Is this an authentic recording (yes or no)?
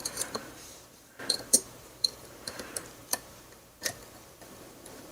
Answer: no